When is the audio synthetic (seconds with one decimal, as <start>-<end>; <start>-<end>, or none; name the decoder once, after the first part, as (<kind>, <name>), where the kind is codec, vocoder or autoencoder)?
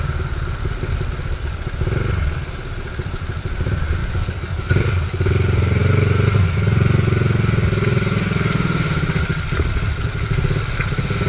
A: 4.0-4.7 (codec, DAC)